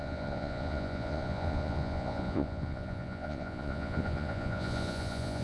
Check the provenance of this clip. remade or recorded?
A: remade